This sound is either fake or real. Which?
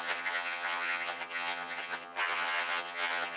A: fake